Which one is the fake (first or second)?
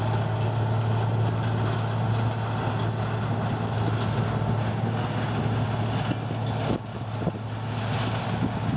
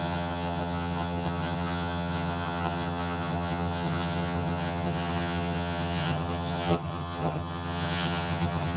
second